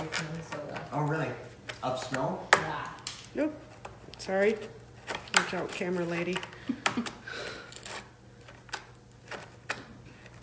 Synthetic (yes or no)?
no